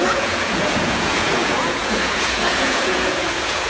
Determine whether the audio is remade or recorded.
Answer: remade